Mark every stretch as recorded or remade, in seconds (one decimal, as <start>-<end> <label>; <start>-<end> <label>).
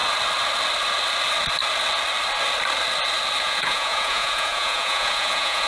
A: 0.0-3.4 recorded; 3.4-5.7 remade